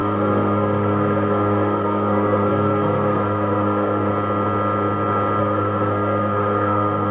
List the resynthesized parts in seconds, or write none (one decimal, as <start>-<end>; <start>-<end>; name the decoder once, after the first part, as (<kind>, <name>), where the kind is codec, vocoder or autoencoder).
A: 0.0-4.1 (codec, SNAC); 5.4-7.1